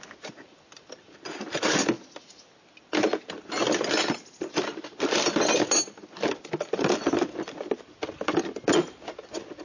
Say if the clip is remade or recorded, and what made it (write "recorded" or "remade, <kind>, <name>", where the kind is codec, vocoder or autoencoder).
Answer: recorded